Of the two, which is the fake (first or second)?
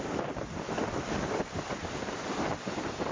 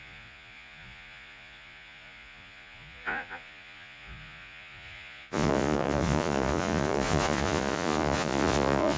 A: second